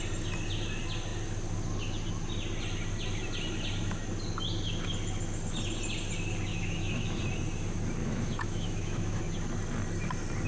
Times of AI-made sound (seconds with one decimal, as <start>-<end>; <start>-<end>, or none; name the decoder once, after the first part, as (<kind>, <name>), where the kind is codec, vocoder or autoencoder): 6.5-7.2 (autoencoder, DAC-VAE); 8.0-9.2